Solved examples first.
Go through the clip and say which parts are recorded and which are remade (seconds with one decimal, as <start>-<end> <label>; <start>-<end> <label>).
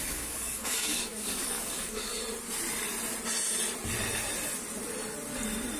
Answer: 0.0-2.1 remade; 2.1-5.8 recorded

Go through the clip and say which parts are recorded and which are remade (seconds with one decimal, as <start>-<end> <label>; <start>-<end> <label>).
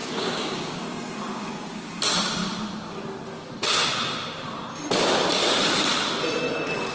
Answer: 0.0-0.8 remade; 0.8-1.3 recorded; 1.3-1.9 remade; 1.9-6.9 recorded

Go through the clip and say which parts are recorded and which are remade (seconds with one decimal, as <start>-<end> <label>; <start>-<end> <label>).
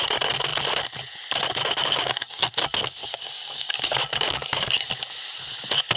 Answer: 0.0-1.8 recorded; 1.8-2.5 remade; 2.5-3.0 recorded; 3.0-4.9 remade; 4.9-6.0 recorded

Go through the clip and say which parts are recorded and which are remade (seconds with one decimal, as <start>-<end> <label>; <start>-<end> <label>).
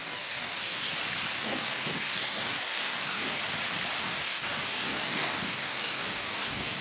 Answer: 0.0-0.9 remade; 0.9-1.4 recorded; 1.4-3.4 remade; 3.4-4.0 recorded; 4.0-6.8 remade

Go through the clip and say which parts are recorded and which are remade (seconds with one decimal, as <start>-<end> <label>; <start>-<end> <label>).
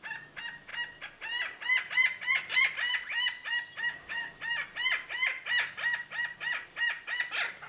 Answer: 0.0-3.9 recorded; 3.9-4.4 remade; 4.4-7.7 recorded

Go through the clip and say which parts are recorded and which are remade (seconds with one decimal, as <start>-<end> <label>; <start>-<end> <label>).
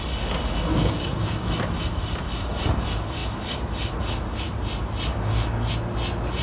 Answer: 0.0-0.7 recorded; 0.7-1.5 remade; 1.5-5.1 recorded; 5.1-5.7 remade; 5.7-6.4 recorded